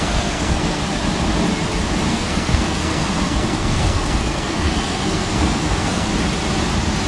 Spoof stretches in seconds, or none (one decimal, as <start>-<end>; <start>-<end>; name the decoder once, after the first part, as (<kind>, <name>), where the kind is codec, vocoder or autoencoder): 0.0-0.8 (codec, SNAC); 2.1-6.1